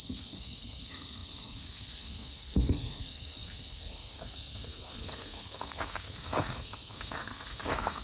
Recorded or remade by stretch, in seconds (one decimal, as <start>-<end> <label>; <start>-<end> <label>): 0.0-8.0 remade